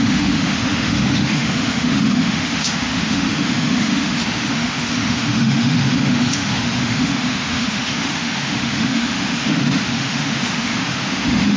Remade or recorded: remade